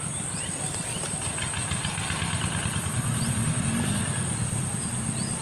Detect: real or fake real